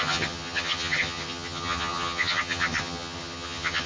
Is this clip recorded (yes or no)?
no